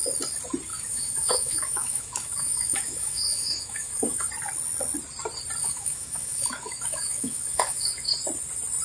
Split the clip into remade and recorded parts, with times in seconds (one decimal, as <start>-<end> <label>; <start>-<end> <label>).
0.0-0.7 recorded; 0.7-4.3 remade; 4.3-5.6 recorded; 5.6-8.1 remade; 8.1-8.8 recorded